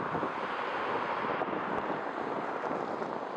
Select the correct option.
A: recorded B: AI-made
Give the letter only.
A